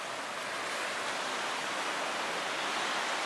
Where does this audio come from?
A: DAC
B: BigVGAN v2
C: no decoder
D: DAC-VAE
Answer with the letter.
C